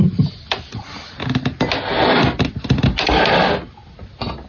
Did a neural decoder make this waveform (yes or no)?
no